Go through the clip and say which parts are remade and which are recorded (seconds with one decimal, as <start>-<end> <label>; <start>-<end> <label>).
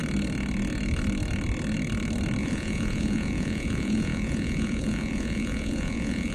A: 0.0-2.4 recorded; 2.4-6.3 remade